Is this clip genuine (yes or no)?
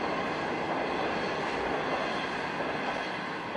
no